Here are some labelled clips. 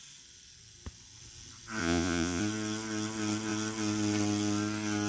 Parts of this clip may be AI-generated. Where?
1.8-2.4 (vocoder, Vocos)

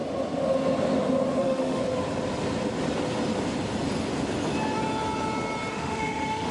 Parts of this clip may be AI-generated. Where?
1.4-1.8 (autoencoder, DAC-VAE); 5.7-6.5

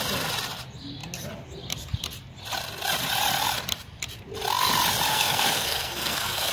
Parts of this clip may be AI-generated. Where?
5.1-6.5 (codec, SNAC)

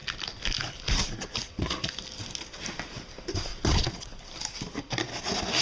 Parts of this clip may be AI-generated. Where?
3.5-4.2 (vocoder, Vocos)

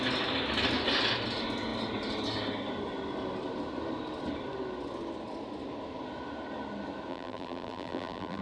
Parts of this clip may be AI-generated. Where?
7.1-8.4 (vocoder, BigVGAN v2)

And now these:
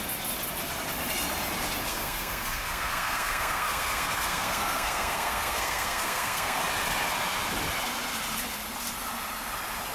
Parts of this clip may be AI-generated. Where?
1.9-6.6 (codec, SNAC)

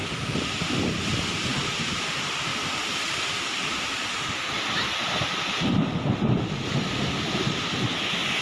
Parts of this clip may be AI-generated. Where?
0.5-8.4 (vocoder, BigVGAN v2)